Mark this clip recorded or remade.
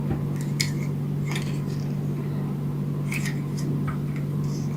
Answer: recorded